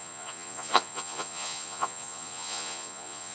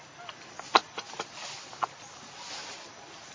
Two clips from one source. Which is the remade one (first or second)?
first